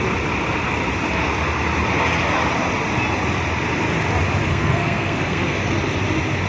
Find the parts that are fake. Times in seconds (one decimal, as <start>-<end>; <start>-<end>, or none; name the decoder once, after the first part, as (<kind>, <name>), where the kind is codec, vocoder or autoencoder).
4.5-5.6 (codec, SNAC)

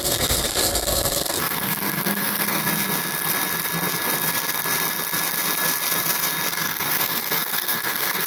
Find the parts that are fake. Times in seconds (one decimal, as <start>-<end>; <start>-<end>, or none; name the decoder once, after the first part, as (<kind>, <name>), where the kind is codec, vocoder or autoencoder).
0.0-2.6 (codec, SNAC); 6.5-8.3

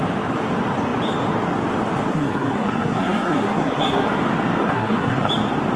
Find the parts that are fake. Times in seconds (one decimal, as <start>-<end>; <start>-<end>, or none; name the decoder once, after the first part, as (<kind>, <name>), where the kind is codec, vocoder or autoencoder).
2.1-4.1 (codec, SNAC); 4.6-5.3

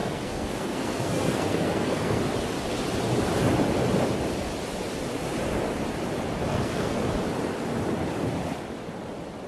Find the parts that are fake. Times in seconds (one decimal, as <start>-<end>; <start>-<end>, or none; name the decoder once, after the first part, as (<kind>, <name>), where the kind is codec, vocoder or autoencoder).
0.0-2.2 (codec, SNAC); 6.5-7.1

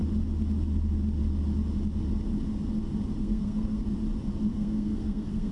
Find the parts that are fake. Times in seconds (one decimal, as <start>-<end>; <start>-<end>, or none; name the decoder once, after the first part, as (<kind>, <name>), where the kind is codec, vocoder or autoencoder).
3.2-3.8 (codec, SNAC); 4.5-5.5

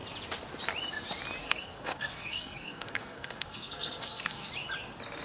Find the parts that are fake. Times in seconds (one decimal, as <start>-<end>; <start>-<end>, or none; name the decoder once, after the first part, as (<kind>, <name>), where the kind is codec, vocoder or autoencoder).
1.4-4.5 (codec, SNAC)

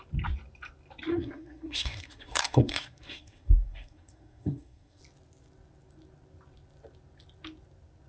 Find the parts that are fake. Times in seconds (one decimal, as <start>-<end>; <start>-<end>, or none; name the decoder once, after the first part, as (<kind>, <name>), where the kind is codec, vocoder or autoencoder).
1.1-5.0 (codec, SNAC)

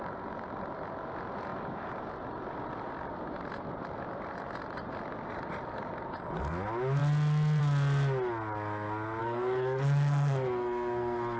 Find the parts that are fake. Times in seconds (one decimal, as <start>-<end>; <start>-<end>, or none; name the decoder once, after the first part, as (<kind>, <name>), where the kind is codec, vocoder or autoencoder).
9.2-11.4 (codec, SNAC)